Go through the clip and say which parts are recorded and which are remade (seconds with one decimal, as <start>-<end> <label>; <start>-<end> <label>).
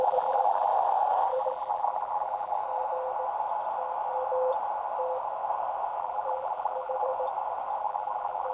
0.0-0.7 remade; 0.7-1.3 recorded; 1.3-2.6 remade; 2.6-6.0 recorded; 6.0-7.1 remade; 7.1-7.8 recorded; 7.8-8.5 remade